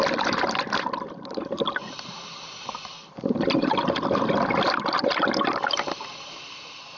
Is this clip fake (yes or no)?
no